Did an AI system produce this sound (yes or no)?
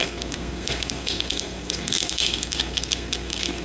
yes